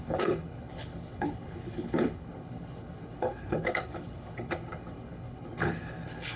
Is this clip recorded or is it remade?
remade